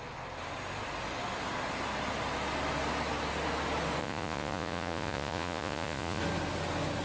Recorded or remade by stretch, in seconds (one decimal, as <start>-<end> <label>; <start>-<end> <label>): 0.0-4.0 recorded; 4.0-6.2 remade; 6.2-7.0 recorded

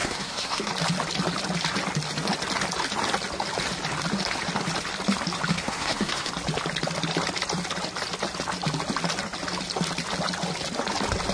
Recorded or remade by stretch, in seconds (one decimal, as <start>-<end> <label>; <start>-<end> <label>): 0.0-0.7 remade; 0.7-5.5 recorded; 5.5-6.3 remade; 6.3-11.3 recorded

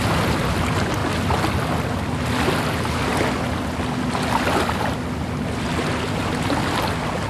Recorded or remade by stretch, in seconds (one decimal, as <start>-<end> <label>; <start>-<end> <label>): 0.0-7.3 recorded

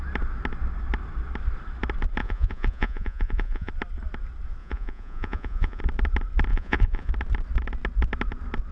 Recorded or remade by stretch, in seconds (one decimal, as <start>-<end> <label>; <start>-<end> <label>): 0.0-2.2 recorded; 2.2-3.7 remade; 3.7-4.6 recorded; 4.6-5.8 remade; 5.8-6.5 recorded; 6.5-7.1 remade; 7.1-8.7 recorded

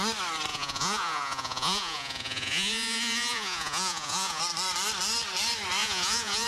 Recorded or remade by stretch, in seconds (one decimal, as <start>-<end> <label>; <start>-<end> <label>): 0.0-0.5 recorded; 0.5-4.4 remade; 4.4-5.8 recorded; 5.8-6.5 remade